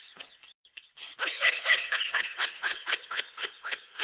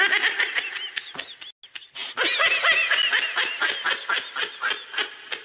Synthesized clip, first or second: first